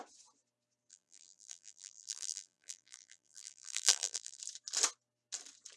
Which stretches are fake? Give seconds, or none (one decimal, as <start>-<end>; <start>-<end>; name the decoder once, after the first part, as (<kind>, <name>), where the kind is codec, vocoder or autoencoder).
0.9-4.4 (vocoder, BigVGAN v2)